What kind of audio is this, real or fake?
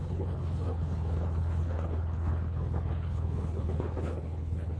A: fake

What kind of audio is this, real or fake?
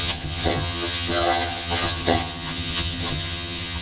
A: fake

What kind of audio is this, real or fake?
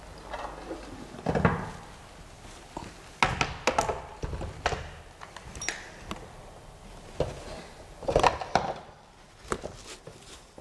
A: real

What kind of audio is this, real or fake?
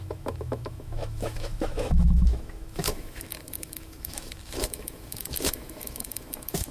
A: fake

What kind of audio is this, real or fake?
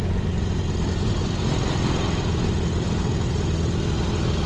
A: real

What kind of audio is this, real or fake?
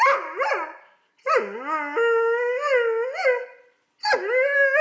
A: real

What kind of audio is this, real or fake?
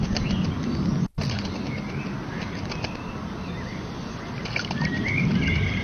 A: real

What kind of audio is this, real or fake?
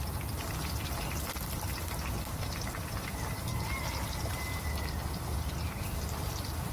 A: real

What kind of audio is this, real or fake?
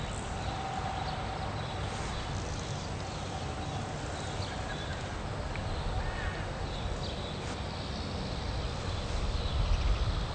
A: real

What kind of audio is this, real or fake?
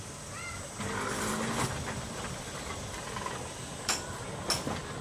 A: real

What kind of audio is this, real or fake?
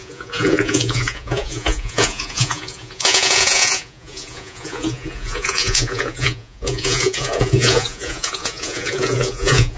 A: fake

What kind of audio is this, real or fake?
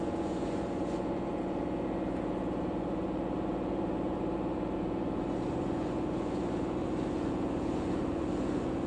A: fake